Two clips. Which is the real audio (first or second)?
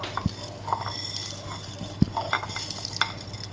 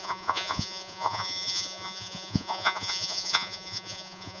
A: first